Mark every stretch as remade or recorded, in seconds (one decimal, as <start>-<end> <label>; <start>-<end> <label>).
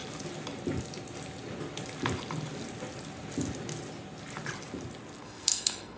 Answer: 0.0-5.2 recorded; 5.2-6.0 remade